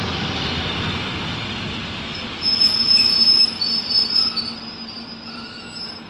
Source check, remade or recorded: recorded